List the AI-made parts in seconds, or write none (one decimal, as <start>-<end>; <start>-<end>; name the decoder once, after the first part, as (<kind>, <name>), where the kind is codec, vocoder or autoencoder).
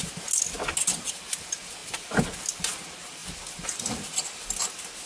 none